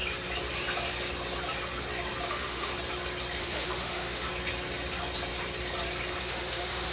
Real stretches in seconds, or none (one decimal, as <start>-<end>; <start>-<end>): 0.0-2.3; 2.7-3.4; 4.3-6.2